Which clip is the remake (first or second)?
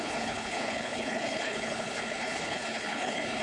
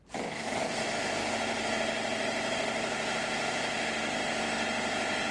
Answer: first